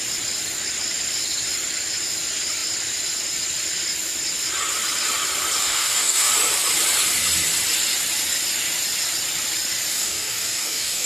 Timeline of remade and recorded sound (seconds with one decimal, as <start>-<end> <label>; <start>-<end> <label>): 0.0-5.6 recorded; 5.6-6.3 remade; 6.3-9.9 recorded; 9.9-11.1 remade